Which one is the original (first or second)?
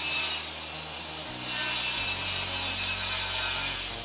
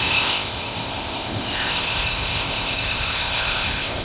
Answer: first